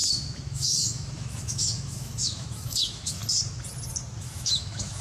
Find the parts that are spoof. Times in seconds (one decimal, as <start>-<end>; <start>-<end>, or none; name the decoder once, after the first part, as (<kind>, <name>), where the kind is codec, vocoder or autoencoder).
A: 0.0-3.2 (autoencoder, DAC-VAE); 4.2-5.0

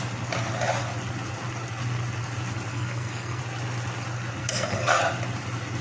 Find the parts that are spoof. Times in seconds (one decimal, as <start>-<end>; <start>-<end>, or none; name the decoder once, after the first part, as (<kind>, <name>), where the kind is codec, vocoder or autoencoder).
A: 2.7-3.4 (codec, SNAC); 4.4-5.0

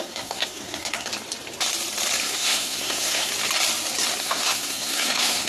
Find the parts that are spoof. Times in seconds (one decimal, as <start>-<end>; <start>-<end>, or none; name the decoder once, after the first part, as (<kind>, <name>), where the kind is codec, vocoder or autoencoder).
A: 0.0-1.1 (codec, SNAC); 2.2-3.3; 4.2-5.5

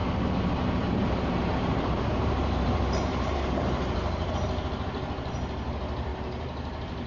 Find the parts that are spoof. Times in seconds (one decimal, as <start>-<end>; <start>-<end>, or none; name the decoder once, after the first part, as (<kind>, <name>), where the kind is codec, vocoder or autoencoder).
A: 0.0-4.3 (vocoder, BigVGAN v2); 6.1-7.1